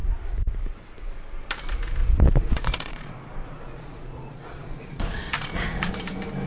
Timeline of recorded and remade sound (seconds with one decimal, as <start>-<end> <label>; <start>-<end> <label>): 0.0-2.0 recorded; 2.0-5.9 remade; 5.9-6.5 recorded